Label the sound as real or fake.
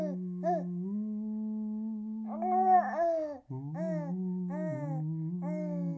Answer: real